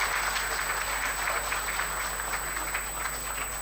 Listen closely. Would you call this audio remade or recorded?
recorded